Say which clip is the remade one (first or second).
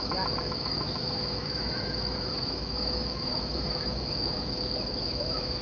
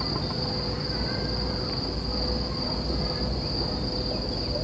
first